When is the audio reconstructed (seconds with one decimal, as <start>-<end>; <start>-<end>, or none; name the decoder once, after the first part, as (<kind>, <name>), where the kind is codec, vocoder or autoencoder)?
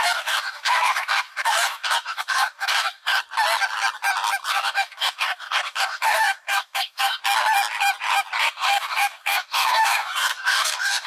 0.0-3.2 (codec, DAC); 4.5-7.2; 8.4-11.1